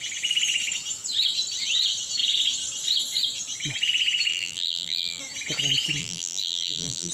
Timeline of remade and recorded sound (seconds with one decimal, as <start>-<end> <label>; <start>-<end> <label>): 0.0-4.3 recorded; 4.3-5.2 remade; 5.2-6.0 recorded; 6.0-7.1 remade